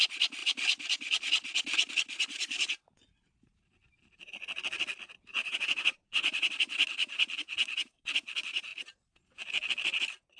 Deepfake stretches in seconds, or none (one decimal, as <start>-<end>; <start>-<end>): 5.4-6.5